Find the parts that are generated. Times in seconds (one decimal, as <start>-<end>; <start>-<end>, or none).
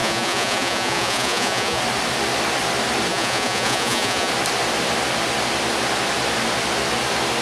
0.0-1.8; 3.1-4.3